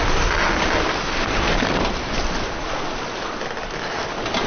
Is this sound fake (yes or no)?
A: no